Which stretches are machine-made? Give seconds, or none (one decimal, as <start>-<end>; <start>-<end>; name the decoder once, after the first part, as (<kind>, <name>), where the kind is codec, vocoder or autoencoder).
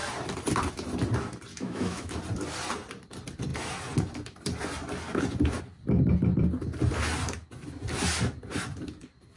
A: 1.5-2.2 (autoencoder, DAC-VAE)